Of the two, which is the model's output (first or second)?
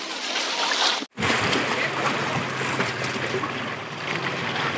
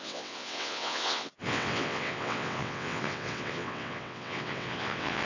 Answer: second